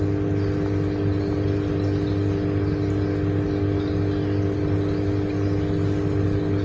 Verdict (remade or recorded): recorded